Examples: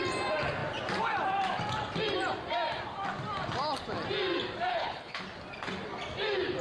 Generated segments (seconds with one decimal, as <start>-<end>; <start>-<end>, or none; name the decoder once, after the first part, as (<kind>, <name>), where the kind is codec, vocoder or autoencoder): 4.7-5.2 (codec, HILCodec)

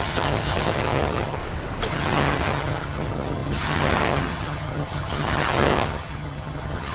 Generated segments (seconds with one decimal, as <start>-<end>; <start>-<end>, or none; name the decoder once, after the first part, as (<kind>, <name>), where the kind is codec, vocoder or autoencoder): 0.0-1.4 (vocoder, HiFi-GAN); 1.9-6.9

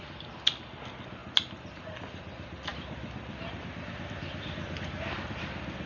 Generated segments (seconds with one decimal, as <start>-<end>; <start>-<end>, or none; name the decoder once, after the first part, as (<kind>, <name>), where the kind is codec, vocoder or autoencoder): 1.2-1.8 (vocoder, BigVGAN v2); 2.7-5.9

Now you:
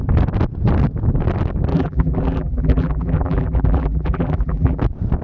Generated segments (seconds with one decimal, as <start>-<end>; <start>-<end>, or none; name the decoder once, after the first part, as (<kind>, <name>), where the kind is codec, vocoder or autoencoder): 1.7-4.8 (vocoder, BigVGAN v2)